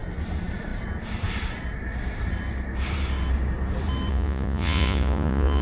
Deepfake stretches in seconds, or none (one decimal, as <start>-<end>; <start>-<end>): 4.1-5.6